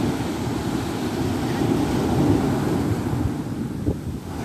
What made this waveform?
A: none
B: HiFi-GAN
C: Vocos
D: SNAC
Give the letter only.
A